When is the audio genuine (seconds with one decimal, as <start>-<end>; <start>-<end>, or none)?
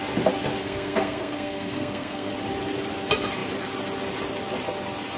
0.0-0.6; 2.3-5.2